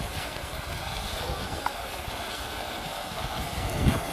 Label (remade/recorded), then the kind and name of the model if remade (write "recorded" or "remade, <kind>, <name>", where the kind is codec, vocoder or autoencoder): remade, codec, SNAC